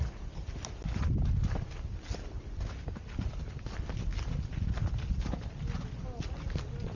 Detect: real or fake real